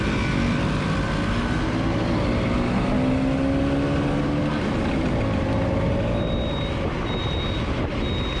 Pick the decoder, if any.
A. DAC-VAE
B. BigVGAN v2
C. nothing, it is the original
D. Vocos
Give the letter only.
C